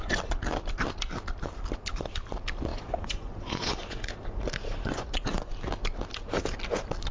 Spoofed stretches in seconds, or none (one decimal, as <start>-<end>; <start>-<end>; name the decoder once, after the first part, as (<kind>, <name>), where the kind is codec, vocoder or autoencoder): 2.7-4.1 (vocoder, Vocos); 4.7-5.5